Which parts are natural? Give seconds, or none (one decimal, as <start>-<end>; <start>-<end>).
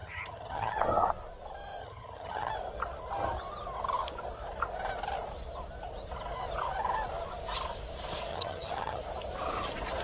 0.8-1.8; 2.5-8.3; 9.0-10.0